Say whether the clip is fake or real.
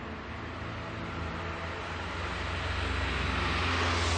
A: real